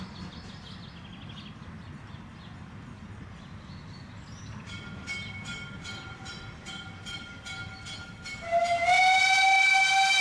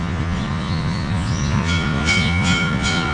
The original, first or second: first